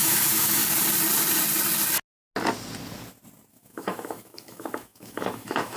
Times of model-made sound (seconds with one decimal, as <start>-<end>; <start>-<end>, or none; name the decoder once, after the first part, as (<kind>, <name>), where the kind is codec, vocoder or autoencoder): 0.0-0.6 (autoencoder, DAC-VAE); 3.5-5.8